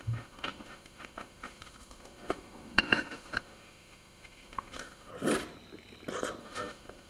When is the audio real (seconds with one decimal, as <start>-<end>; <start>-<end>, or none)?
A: 5.1-6.4